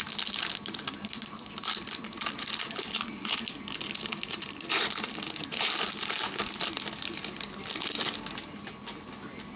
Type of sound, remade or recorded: recorded